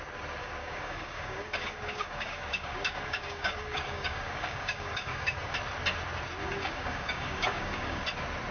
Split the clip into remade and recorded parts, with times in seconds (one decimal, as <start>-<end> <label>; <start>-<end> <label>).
0.0-0.4 recorded; 0.4-5.5 remade; 5.5-6.4 recorded; 6.4-8.0 remade; 8.0-8.5 recorded